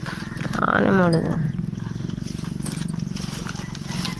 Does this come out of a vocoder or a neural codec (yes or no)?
yes